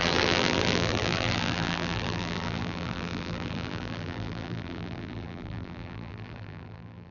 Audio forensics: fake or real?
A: fake